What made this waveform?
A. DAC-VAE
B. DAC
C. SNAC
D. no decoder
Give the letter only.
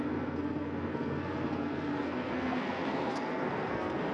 C